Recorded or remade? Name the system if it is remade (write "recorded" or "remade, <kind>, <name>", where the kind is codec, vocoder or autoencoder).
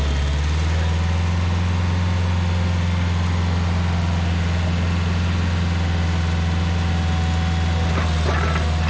recorded